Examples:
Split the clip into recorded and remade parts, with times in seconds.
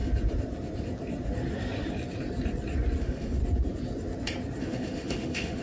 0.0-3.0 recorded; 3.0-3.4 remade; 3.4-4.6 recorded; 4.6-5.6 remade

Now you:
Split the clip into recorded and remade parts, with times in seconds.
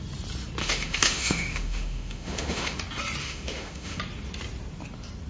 0.0-0.6 recorded; 0.6-2.8 remade; 2.8-3.2 recorded; 3.2-4.0 remade; 4.0-5.3 recorded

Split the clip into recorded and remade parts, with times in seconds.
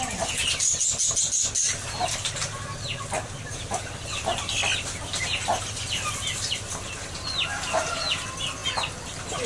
0.0-9.5 recorded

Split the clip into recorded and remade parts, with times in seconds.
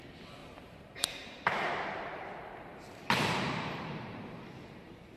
0.0-0.4 recorded; 0.4-2.2 remade; 2.2-2.7 recorded; 2.7-4.7 remade; 4.7-5.2 recorded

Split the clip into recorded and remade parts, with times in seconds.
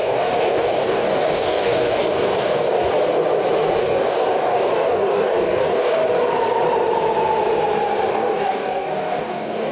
0.0-2.9 remade; 2.9-3.8 recorded; 3.8-6.0 remade; 6.0-8.1 recorded; 8.1-9.7 remade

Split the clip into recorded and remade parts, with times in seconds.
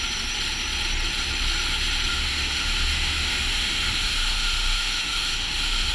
0.0-2.1 recorded; 2.1-5.9 remade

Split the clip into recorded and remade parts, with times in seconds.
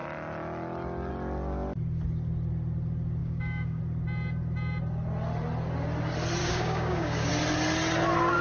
0.0-3.2 recorded; 3.2-3.8 remade; 3.8-6.4 recorded; 6.4-7.3 remade; 7.3-8.4 recorded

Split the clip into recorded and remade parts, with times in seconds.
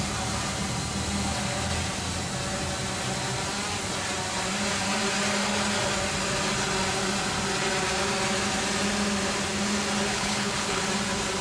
0.0-10.1 recorded; 10.1-10.8 remade; 10.8-11.4 recorded